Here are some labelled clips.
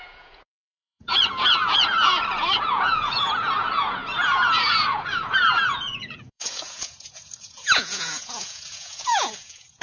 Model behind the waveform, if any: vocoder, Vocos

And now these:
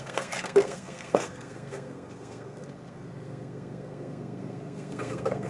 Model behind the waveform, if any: codec, SNAC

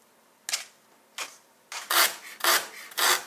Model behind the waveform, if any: none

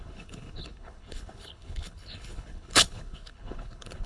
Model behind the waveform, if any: codec, HILCodec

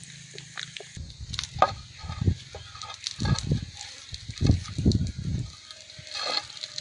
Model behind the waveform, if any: none